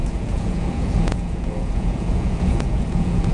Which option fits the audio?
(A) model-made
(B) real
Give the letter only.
A